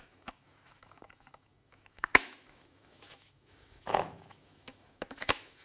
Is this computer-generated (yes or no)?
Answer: yes